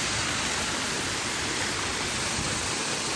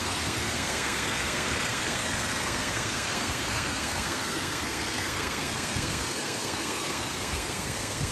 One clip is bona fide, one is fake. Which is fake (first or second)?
second